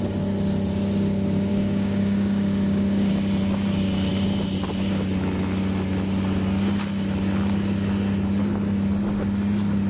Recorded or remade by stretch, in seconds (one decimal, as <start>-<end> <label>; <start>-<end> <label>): 0.0-1.5 recorded; 1.5-3.1 remade; 3.1-9.9 recorded

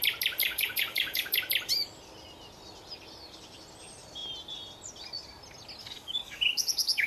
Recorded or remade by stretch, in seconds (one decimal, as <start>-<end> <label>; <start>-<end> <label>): 0.0-0.4 recorded; 0.4-1.4 remade; 1.4-5.8 recorded; 5.8-7.1 remade

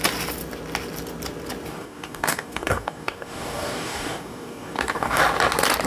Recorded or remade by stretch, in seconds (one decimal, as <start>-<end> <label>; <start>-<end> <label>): 0.0-1.7 recorded; 1.7-5.2 remade; 5.2-5.9 recorded

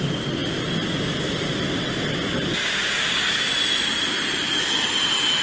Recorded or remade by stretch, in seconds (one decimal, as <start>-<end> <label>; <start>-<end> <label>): 0.0-2.5 recorded; 2.5-3.4 remade; 3.4-5.4 recorded

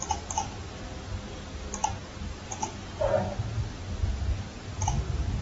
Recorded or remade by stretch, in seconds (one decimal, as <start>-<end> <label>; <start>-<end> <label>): 0.0-5.4 recorded

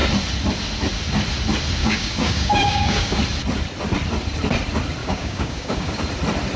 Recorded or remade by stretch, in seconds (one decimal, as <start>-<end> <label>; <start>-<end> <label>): 0.0-1.8 recorded; 1.8-3.2 remade; 3.2-5.0 recorded; 5.0-6.0 remade; 6.0-6.6 recorded

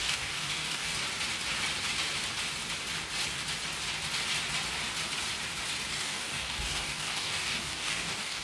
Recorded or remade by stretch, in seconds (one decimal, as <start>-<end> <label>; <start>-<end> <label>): 0.0-0.9 remade; 0.9-5.9 recorded; 5.9-8.4 remade

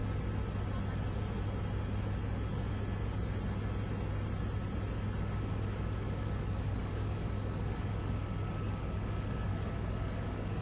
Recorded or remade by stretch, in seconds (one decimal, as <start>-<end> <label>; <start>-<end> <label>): 0.0-5.2 recorded; 5.2-10.6 remade